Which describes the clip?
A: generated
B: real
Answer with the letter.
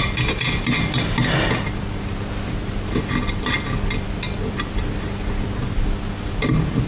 B